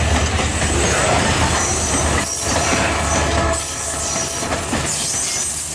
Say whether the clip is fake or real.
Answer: real